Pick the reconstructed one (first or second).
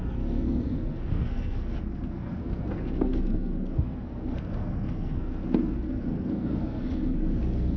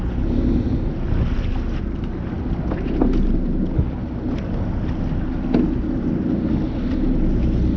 first